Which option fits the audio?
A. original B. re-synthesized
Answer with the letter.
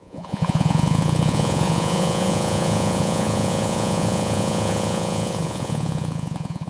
B